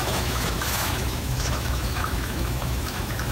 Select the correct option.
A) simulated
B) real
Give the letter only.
A